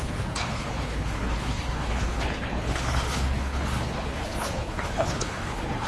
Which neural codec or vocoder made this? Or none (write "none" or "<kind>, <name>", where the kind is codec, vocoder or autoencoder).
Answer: codec, HILCodec